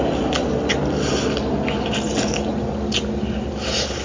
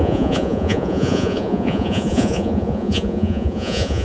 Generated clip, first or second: second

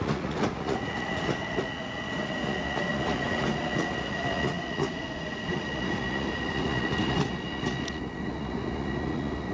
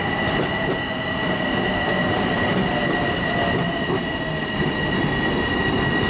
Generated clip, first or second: first